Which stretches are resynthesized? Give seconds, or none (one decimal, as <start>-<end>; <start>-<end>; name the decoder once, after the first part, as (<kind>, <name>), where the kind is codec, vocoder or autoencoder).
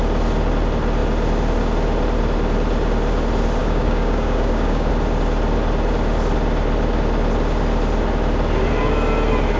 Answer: 3.6-4.9 (codec, DAC)